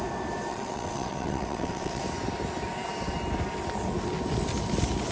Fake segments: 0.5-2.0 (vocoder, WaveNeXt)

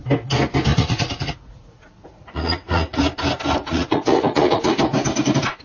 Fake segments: 0.7-3.0 (vocoder, Vocos); 3.6-4.7

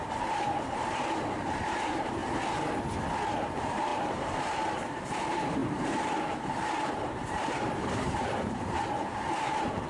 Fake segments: 0.0-2.2 (vocoder, BigVGAN v2); 3.4-9.9